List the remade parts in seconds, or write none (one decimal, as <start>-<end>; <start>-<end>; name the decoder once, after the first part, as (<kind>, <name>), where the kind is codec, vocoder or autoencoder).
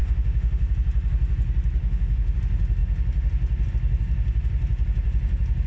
0.0-0.7 (autoencoder, DAC-VAE); 1.8-2.4